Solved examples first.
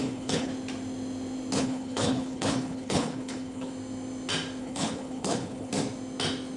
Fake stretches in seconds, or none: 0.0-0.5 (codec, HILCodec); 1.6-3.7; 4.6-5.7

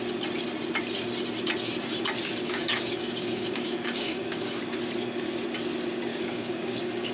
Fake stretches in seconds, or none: 2.4-4.6 (codec, DAC); 6.1-7.1

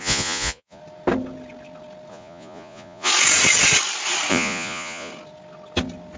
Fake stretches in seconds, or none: 0.0-0.8 (vocoder, Vocos); 2.1-3.1; 4.3-5.1

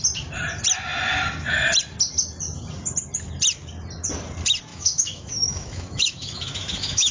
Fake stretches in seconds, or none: 4.7-7.1 (autoencoder, DAC-VAE)

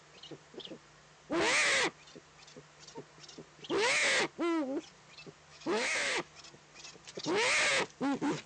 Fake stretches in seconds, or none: 5.5-6.3 (autoencoder, DAC-VAE)

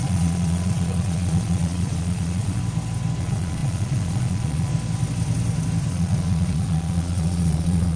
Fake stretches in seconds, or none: 0.0-2.6 (vocoder, Vocos); 3.2-4.7; 5.9-8.0